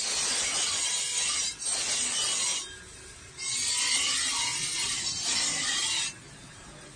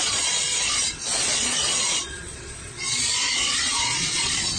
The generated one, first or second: second